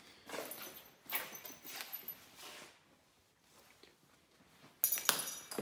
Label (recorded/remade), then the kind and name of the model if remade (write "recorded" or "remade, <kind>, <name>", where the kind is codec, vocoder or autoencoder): recorded